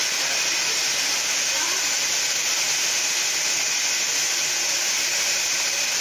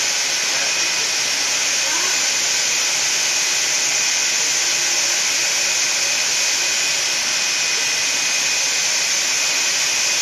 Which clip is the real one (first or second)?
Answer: second